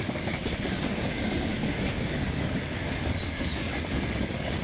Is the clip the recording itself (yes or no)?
no